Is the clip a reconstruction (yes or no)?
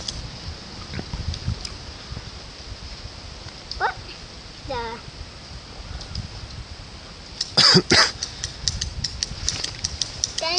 no